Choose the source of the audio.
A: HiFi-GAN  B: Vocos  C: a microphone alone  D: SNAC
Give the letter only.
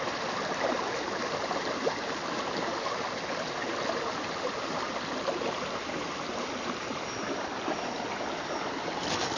C